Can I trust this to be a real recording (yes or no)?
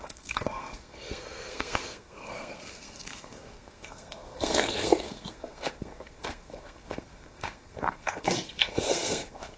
no